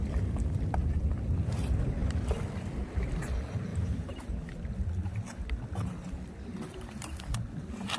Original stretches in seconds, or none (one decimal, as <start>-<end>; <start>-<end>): 0.0-3.7; 4.3-8.0